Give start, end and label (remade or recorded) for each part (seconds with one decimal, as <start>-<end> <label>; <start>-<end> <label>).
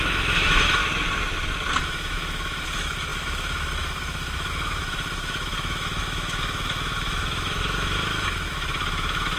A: 0.0-0.8 remade; 0.8-1.8 recorded; 1.8-9.4 remade